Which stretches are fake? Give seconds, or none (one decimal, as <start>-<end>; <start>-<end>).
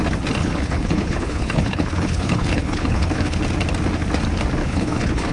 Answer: 0.4-3.4; 4.6-5.3